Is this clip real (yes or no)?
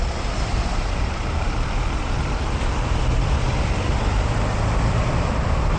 no